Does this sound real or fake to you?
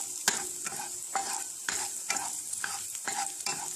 real